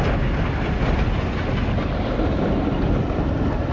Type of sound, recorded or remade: recorded